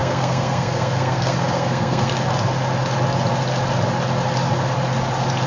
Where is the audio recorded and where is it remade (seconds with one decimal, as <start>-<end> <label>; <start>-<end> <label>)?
0.0-2.1 remade; 2.1-5.5 recorded